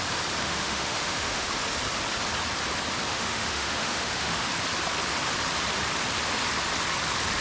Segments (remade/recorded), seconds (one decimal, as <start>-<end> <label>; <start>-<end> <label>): 0.0-0.4 recorded; 0.4-1.5 remade; 1.5-3.1 recorded; 3.1-4.5 remade; 4.5-7.4 recorded